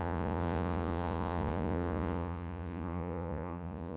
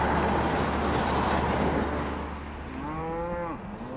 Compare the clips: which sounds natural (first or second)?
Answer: second